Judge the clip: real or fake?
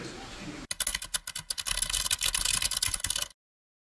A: real